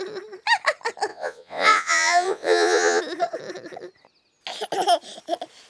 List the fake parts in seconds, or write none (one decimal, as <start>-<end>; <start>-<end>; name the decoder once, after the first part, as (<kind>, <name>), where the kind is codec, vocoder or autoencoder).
1.1-3.0 (vocoder, Vocos)